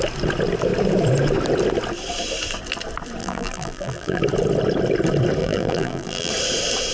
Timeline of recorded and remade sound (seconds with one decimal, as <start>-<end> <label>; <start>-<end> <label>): 0.0-3.2 recorded; 3.2-4.2 remade; 4.2-5.4 recorded; 5.4-6.3 remade; 6.3-6.9 recorded